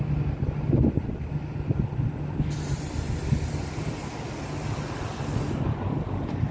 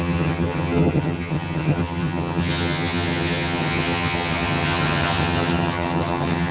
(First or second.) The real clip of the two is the first